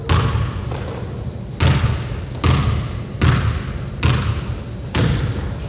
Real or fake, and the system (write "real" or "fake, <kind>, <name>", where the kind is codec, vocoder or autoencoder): real